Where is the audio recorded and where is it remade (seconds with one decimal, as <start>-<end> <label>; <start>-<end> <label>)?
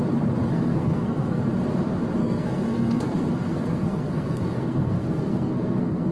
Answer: 0.0-0.5 recorded; 0.5-1.4 remade; 1.4-2.2 recorded; 2.2-6.1 remade